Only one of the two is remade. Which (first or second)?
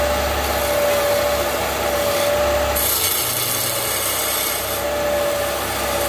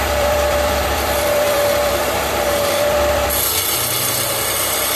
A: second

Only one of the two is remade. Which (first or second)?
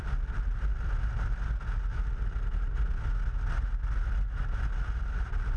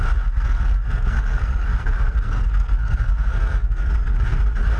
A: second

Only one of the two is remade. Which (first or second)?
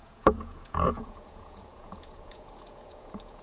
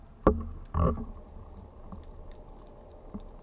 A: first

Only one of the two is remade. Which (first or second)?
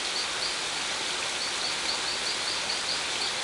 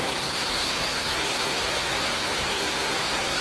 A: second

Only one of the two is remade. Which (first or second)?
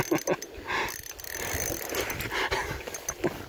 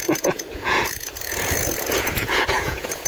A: second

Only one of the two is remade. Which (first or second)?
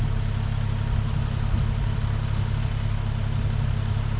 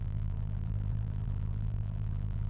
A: second